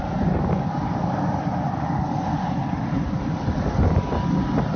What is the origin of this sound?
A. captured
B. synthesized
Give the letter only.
A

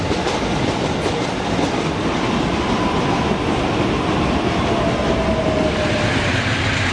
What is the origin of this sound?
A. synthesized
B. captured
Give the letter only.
B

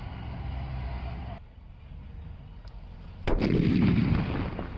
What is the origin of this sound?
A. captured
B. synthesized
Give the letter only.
A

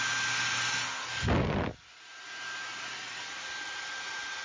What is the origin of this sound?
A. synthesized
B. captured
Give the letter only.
B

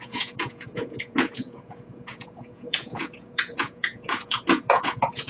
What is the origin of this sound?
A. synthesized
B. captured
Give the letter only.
A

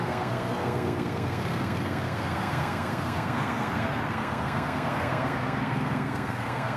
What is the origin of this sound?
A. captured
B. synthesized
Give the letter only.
B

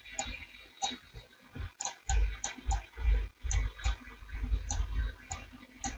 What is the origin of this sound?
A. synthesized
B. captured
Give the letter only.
B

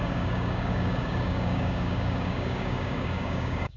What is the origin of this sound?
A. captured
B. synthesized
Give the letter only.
B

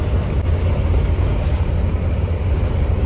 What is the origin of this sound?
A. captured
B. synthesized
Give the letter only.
A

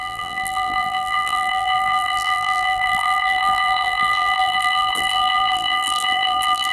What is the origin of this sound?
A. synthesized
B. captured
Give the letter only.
A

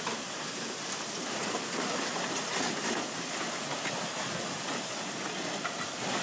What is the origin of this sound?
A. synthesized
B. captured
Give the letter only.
B